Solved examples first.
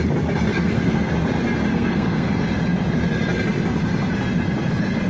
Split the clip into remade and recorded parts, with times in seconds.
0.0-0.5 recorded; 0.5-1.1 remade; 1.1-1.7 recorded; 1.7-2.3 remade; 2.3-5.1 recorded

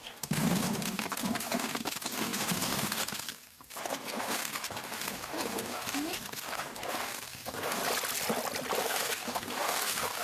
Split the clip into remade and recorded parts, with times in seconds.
0.0-7.8 remade; 7.8-8.8 recorded; 8.8-10.2 remade

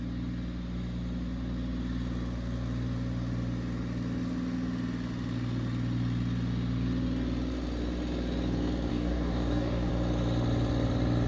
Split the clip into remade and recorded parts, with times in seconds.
0.0-8.9 recorded; 8.9-9.9 remade; 9.9-11.3 recorded

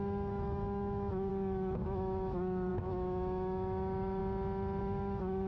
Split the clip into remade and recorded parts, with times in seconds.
0.0-4.2 remade; 4.2-4.8 recorded; 4.8-5.5 remade

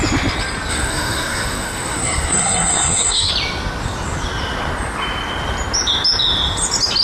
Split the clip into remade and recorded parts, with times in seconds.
0.0-0.7 recorded; 0.7-3.3 remade; 3.3-7.0 recorded

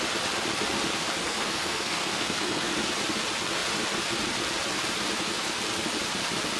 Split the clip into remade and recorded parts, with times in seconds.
0.0-1.2 recorded; 1.2-2.7 remade; 2.7-6.6 recorded

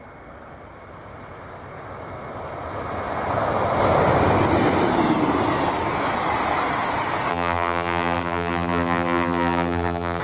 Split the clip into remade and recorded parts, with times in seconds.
0.0-7.3 recorded; 7.3-10.2 remade